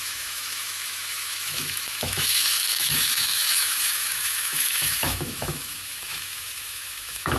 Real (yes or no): no